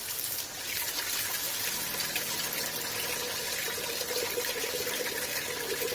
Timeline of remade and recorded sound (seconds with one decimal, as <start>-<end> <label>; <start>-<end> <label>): 0.0-5.9 recorded

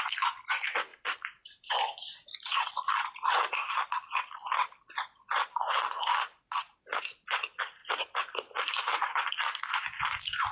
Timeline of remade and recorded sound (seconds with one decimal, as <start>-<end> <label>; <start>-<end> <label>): 0.0-0.9 recorded; 0.9-1.8 remade; 1.8-7.8 recorded; 7.8-9.2 remade; 9.2-10.5 recorded

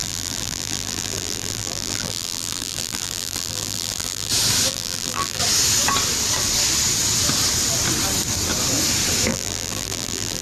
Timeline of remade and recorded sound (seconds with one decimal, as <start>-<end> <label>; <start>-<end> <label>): 0.0-4.3 remade; 4.3-4.7 recorded; 4.7-5.4 remade; 5.4-9.3 recorded; 9.3-10.4 remade

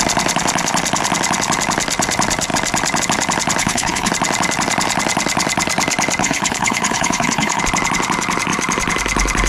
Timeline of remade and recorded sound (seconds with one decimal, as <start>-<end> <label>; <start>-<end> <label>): 0.0-3.6 recorded; 3.6-4.1 remade; 4.1-6.2 recorded; 6.2-7.6 remade; 7.6-9.5 recorded

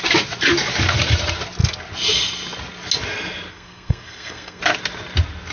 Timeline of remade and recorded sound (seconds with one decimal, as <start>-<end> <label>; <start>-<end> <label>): 0.0-3.5 recorded; 3.5-4.6 remade; 4.6-5.5 recorded

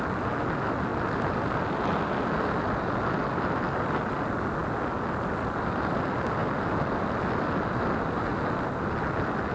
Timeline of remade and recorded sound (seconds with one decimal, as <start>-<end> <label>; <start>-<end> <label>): 0.0-9.5 recorded

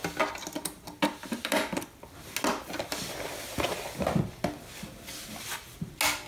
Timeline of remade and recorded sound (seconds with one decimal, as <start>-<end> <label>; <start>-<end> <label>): 0.0-6.3 recorded